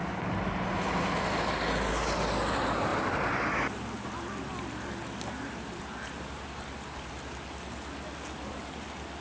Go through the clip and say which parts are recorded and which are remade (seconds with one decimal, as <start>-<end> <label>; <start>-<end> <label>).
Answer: 0.0-9.2 recorded